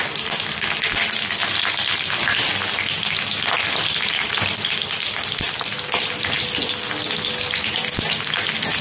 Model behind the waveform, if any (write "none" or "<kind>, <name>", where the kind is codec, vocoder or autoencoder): none